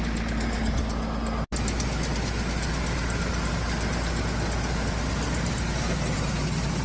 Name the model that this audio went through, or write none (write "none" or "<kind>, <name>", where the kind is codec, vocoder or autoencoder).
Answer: none